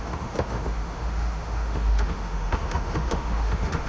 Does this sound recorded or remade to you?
remade